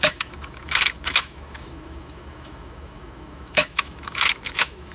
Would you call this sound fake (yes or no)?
yes